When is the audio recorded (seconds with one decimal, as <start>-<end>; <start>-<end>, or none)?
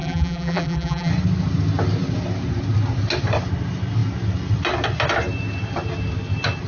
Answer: 1.1-6.7